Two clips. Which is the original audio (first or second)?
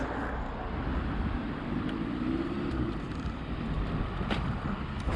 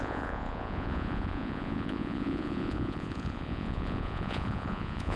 first